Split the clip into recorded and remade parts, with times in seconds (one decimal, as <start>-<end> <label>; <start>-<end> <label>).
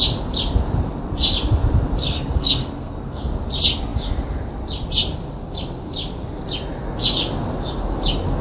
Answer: 0.0-2.0 recorded; 2.0-3.2 remade; 3.2-8.4 recorded